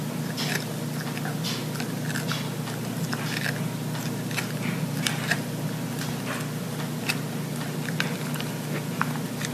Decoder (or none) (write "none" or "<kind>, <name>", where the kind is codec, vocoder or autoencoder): none